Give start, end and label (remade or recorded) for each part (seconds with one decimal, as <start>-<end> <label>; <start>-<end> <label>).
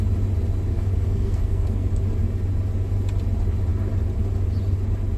0.0-0.7 recorded; 0.7-1.9 remade; 1.9-5.2 recorded